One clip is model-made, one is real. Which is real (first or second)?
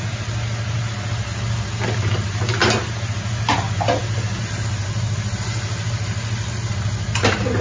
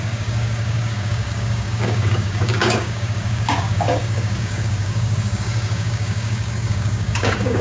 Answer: first